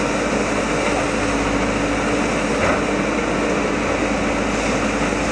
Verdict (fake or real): real